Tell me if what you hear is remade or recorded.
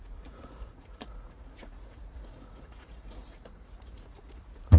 remade